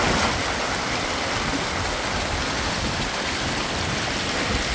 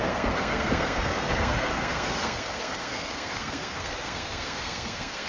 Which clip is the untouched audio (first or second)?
first